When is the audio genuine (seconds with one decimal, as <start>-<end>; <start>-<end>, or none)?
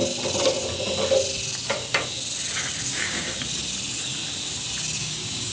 0.0-2.9; 3.3-5.0